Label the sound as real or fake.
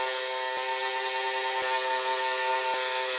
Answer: real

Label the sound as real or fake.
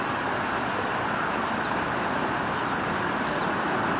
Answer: fake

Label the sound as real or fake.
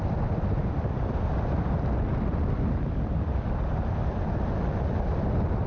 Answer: real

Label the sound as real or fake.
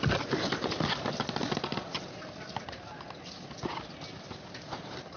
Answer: real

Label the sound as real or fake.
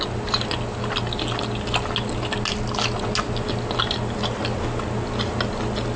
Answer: real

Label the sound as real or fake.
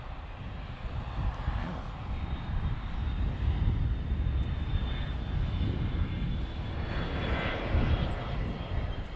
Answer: real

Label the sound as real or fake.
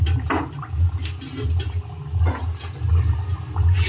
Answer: real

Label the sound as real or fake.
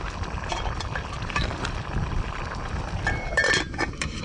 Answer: fake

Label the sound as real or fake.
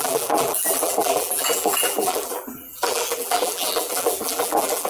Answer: fake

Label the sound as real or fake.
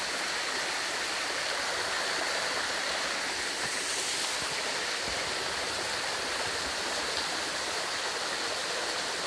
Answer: real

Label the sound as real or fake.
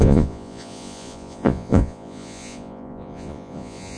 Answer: fake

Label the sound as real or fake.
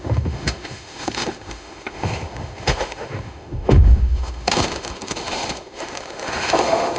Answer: fake